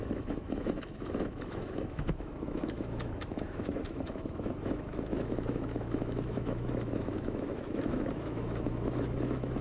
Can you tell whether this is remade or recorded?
remade